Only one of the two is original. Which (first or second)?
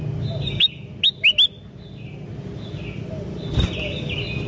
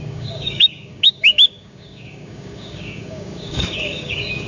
first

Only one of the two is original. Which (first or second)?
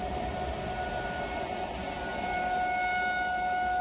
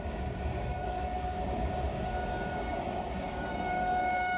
first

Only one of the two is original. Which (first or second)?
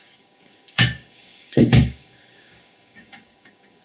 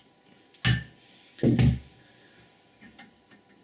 second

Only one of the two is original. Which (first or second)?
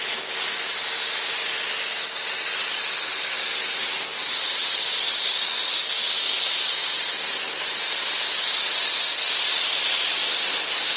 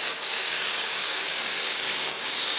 first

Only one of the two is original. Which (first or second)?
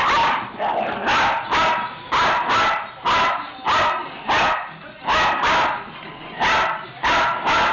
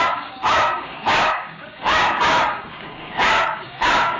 first